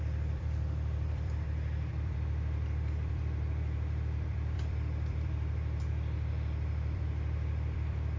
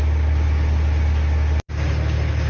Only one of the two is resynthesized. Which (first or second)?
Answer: first